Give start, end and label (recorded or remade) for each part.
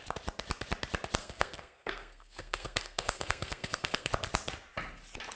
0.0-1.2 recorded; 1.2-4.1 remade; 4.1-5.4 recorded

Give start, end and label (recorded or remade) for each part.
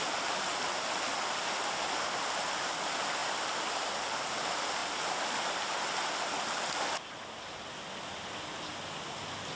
0.0-3.2 recorded; 3.2-3.9 remade; 3.9-9.6 recorded